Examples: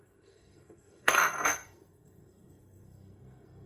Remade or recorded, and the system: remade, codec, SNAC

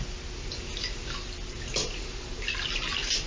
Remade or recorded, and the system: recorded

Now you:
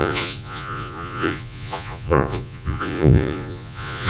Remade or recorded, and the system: remade, vocoder, Vocos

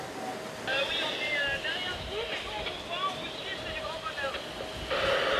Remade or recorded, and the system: recorded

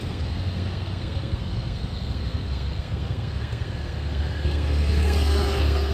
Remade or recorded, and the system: remade, codec, SNAC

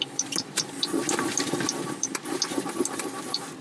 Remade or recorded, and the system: remade, vocoder, BigVGAN v2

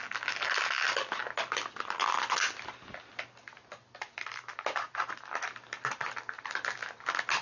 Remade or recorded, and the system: recorded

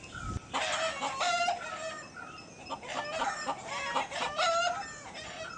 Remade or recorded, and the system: recorded